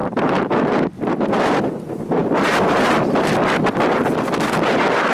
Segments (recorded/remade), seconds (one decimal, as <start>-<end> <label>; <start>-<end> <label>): 0.0-2.2 recorded; 2.2-3.6 remade; 3.6-5.1 recorded